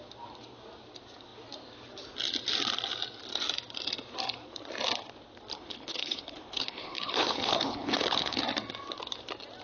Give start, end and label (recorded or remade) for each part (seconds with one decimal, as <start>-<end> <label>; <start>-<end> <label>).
0.0-5.5 recorded; 5.5-8.4 remade; 8.4-9.6 recorded